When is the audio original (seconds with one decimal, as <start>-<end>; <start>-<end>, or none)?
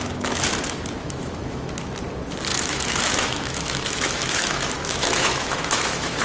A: 0.0-1.0; 1.7-2.5